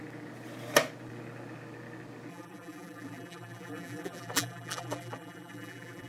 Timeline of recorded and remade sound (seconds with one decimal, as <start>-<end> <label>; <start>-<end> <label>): 0.0-2.3 recorded; 2.3-6.1 remade